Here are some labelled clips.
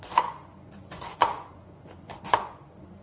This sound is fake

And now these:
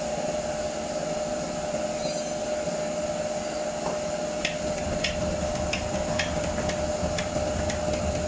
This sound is real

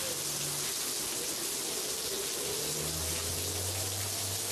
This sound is real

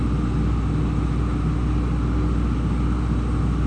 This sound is real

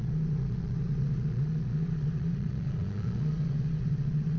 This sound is fake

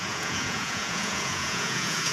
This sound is fake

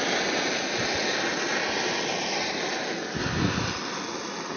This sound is real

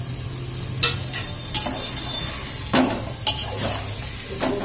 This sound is real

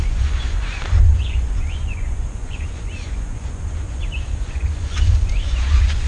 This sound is fake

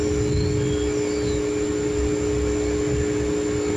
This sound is real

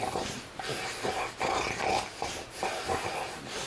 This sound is real